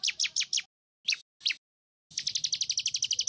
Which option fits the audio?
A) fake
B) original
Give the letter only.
B